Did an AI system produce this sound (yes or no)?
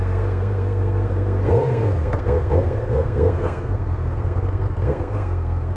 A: yes